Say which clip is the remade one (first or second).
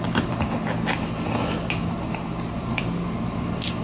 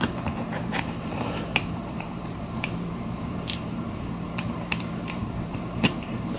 second